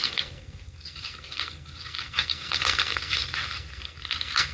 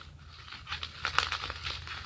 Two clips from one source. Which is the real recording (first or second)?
second